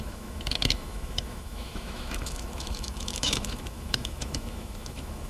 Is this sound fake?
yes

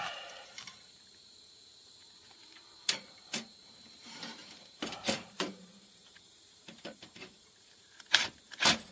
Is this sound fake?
yes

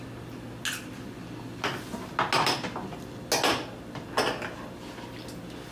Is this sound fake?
no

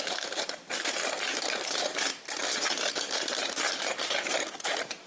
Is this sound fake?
yes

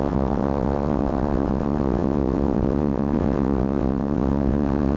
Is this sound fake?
yes